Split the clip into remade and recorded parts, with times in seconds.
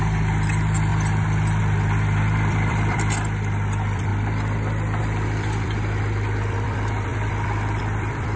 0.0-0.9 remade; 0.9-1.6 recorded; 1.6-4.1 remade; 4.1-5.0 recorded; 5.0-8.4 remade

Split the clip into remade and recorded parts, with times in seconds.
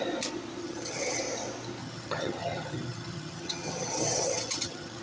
0.0-0.6 recorded; 0.6-1.2 remade; 1.2-1.8 recorded; 1.8-5.0 remade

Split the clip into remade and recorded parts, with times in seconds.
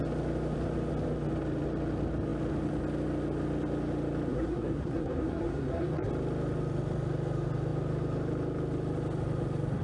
0.0-4.3 recorded; 4.3-6.1 remade; 6.1-9.8 recorded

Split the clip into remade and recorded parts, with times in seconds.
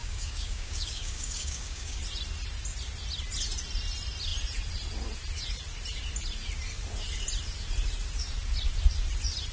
0.0-2.0 remade; 2.0-9.5 recorded